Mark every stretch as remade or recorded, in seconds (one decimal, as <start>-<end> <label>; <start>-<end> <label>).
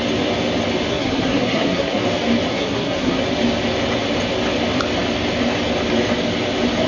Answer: 0.0-0.9 recorded; 0.9-2.0 remade; 2.0-2.5 recorded; 2.5-3.2 remade; 3.2-6.9 recorded